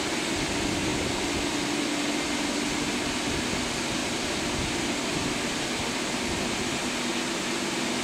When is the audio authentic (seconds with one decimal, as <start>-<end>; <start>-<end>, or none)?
0.0-8.0